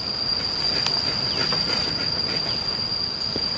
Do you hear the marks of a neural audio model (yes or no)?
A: no